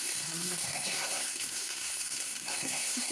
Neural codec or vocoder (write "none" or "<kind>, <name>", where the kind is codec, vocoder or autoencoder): codec, SNAC